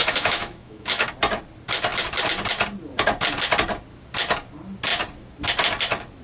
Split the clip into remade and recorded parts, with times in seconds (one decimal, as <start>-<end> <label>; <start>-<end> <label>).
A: 0.0-1.1 remade; 1.1-6.2 recorded